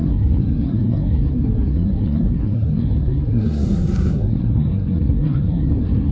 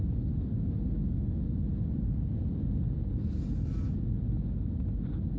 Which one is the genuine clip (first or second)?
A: second